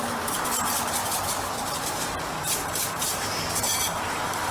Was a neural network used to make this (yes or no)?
yes